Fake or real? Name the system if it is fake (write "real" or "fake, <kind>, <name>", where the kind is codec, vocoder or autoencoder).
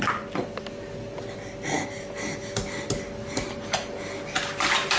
real